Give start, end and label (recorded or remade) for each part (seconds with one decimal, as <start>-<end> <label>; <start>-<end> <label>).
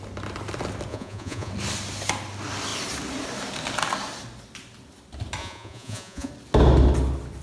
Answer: 0.0-0.9 recorded; 0.9-1.5 remade; 1.5-5.4 recorded; 5.4-6.3 remade; 6.3-7.4 recorded